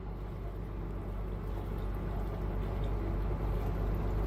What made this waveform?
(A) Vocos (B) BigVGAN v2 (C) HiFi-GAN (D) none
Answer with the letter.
D